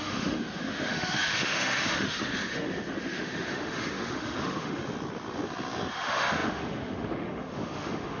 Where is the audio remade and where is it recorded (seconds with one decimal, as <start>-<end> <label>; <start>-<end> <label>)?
0.0-4.8 remade; 4.8-5.9 recorded; 5.9-8.2 remade